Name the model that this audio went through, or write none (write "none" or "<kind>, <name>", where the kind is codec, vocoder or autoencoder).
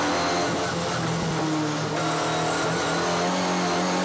none